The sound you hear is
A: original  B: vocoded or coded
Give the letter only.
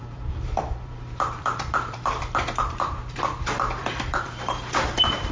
B